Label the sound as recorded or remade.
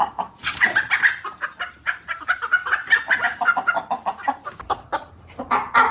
recorded